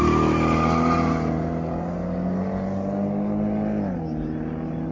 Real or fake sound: real